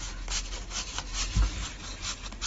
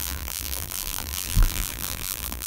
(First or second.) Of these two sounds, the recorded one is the first